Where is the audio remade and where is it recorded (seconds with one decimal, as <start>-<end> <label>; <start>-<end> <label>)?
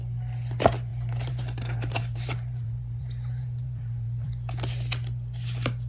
0.0-0.9 recorded; 0.9-4.3 remade; 4.3-5.9 recorded